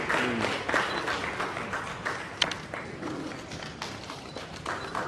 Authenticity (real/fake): real